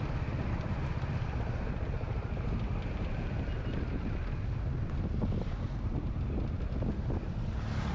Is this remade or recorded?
recorded